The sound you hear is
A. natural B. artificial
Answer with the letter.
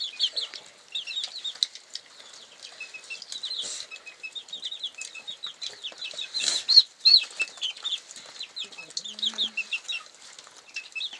A